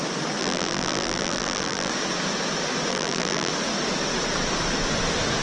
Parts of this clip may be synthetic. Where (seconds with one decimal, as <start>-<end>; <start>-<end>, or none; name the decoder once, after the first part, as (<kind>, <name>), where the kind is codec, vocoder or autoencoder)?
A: 0.4-1.9 (vocoder, BigVGAN v2); 2.9-3.5